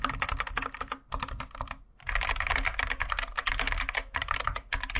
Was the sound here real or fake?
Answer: real